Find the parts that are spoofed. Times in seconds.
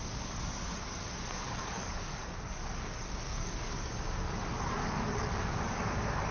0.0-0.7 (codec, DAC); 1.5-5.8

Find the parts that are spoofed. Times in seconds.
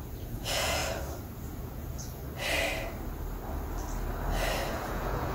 0.0-0.8 (vocoder, Vocos); 1.6-2.2; 4.7-5.3